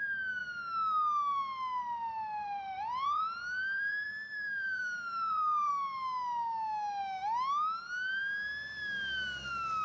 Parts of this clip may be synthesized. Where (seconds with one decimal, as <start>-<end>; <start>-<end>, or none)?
2.4-5.7